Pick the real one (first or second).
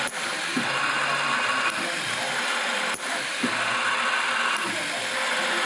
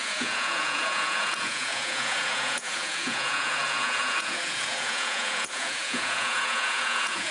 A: first